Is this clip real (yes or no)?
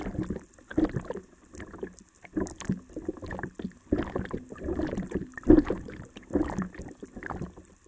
yes